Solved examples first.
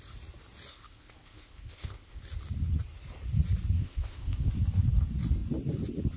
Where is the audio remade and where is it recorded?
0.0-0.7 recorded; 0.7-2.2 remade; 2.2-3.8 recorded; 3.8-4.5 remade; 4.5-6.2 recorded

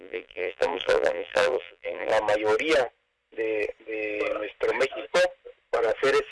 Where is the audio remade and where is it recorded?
0.0-2.1 remade; 2.1-6.3 recorded

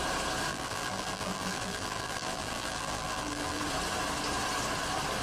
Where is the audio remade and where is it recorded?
0.0-0.5 recorded; 0.5-3.6 remade; 3.6-5.2 recorded

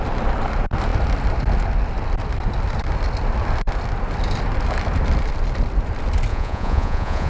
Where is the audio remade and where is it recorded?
0.0-6.3 recorded; 6.3-7.3 remade

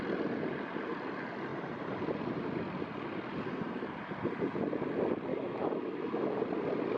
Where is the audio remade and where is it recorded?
0.0-5.3 recorded; 5.3-6.4 remade; 6.4-7.0 recorded

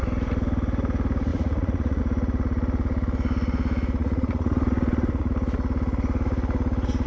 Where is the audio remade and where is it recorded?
0.0-1.3 recorded; 1.3-2.0 remade; 2.0-4.0 recorded; 4.0-5.3 remade; 5.3-7.1 recorded

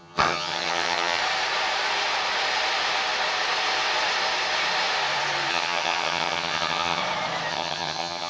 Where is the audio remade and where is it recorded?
0.0-1.2 remade; 1.2-5.5 recorded; 5.5-7.0 remade; 7.0-7.5 recorded; 7.5-8.3 remade

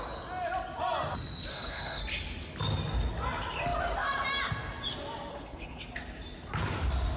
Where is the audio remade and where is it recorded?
0.0-1.5 recorded; 1.5-2.0 remade; 2.0-5.3 recorded; 5.3-5.8 remade; 5.8-7.2 recorded